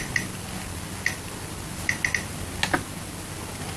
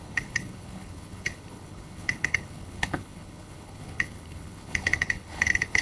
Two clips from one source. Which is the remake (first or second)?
second